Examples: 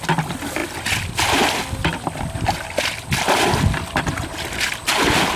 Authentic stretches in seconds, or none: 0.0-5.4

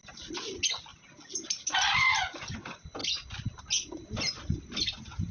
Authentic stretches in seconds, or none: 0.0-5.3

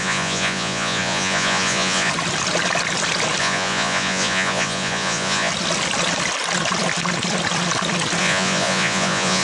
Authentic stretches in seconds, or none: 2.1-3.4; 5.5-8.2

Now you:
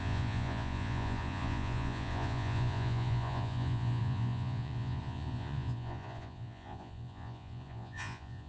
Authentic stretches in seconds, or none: none